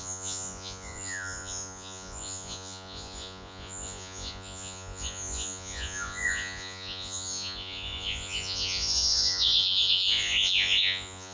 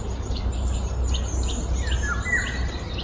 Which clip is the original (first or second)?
second